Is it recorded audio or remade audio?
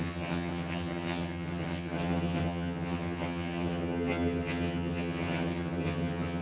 remade